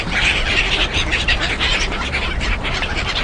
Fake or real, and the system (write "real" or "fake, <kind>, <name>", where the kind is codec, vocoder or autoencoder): real